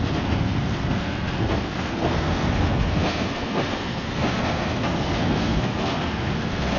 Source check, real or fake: fake